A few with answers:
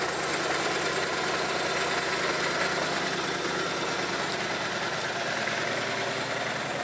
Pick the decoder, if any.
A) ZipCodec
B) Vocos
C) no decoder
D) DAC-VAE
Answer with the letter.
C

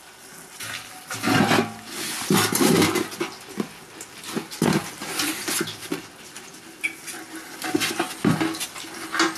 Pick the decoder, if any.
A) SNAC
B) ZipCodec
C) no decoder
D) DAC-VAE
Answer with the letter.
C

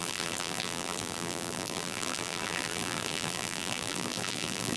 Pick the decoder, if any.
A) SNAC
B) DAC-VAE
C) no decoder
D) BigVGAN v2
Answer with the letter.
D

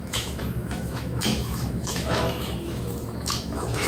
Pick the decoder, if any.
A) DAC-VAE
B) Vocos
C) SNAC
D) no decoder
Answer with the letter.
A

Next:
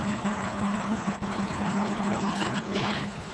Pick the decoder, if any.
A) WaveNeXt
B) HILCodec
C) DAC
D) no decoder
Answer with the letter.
B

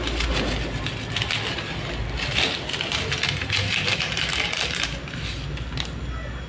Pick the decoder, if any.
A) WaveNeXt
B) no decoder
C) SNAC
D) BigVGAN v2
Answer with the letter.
B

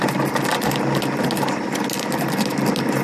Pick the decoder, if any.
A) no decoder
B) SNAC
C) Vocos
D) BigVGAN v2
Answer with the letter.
A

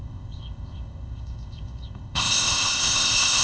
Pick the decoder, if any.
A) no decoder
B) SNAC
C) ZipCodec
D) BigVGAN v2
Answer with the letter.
C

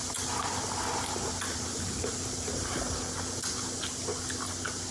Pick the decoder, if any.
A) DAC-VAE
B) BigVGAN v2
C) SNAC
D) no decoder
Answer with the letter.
D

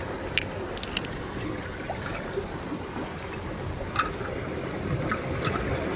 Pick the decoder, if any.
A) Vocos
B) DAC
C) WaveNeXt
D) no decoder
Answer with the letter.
D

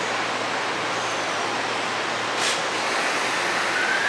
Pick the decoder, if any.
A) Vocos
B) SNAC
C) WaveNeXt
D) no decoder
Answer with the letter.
D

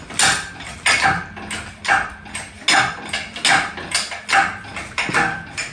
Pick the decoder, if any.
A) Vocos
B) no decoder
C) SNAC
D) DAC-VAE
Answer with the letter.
B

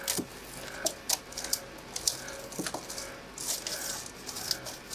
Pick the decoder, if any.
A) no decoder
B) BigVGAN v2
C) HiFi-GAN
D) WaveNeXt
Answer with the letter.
A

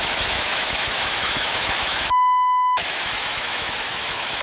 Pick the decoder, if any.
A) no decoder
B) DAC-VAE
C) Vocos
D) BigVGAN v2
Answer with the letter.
B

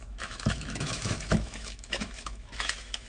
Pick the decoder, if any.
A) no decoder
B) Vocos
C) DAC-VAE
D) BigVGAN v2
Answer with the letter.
C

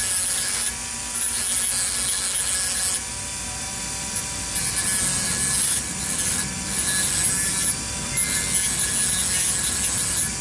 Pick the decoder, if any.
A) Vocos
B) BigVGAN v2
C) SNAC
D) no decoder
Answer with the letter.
D